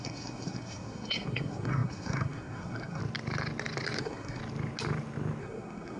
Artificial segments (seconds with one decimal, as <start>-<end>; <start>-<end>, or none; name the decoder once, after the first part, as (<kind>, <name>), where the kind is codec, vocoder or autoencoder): 0.0-3.0 (codec, SNAC); 4.0-4.4; 5.4-6.0